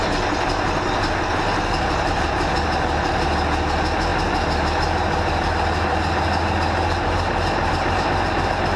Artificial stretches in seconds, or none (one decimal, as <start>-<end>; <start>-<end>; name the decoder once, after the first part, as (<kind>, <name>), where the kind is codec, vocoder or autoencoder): none